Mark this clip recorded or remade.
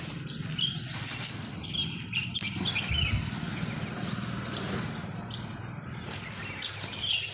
recorded